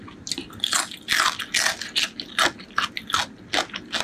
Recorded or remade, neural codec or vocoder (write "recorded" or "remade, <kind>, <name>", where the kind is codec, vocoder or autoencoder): recorded